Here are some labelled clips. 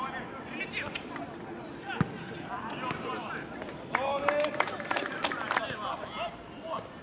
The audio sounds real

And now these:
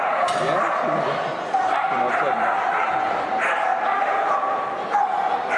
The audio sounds real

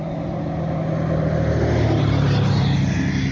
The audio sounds real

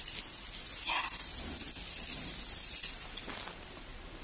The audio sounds real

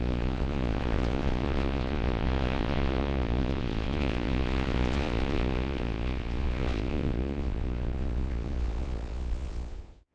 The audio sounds fake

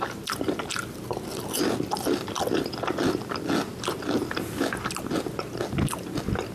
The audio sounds real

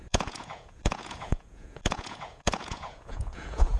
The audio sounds fake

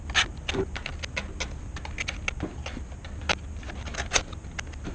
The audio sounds real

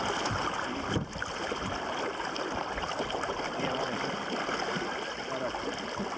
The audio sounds real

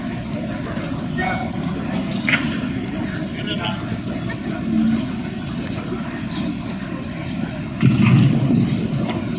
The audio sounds real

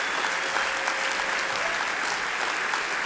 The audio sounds real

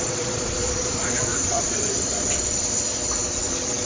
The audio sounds fake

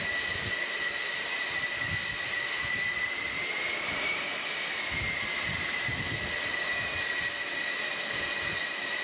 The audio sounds real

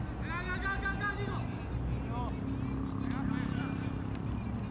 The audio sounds real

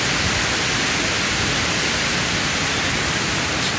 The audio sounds real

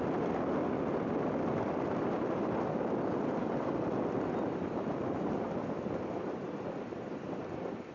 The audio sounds real